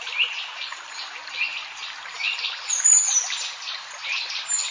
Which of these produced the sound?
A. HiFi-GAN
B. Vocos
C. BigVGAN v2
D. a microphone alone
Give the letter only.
D